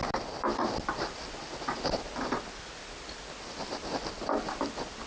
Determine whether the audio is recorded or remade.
recorded